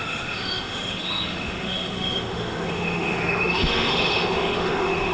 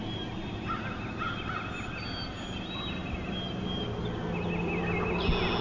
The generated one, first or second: first